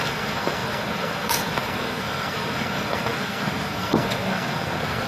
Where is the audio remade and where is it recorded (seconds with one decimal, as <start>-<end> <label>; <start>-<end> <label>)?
0.0-5.1 remade